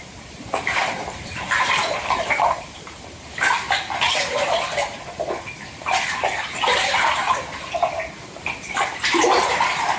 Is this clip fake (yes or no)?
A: yes